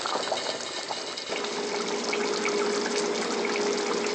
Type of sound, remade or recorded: recorded